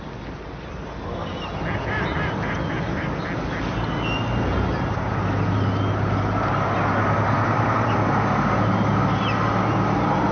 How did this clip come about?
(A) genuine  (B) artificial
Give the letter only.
A